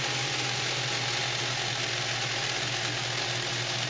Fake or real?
real